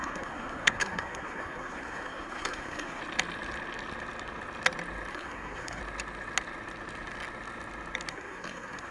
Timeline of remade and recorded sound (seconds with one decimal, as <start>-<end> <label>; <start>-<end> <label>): 0.0-3.0 remade; 3.0-5.1 recorded; 5.1-5.8 remade; 5.8-8.1 recorded; 8.1-8.9 remade